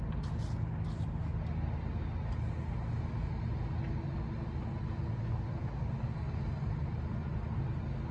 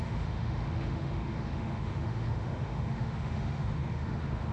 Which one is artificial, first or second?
second